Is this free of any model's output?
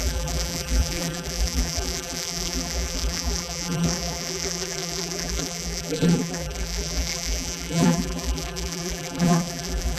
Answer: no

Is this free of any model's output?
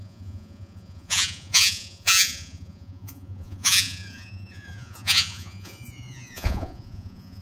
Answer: no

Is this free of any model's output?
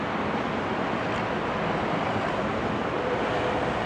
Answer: yes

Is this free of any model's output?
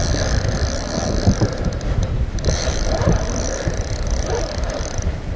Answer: no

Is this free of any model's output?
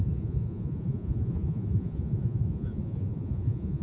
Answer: no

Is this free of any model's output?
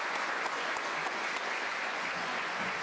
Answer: no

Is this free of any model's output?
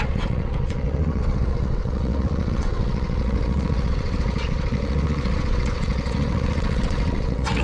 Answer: no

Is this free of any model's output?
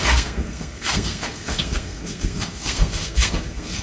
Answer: no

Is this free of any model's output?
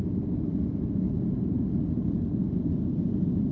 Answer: yes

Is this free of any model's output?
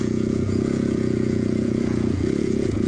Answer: no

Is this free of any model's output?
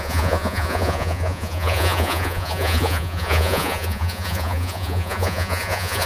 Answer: no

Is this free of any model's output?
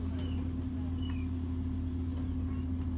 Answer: yes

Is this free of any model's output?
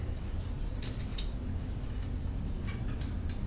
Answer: yes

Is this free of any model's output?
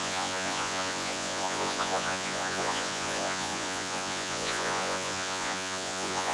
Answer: no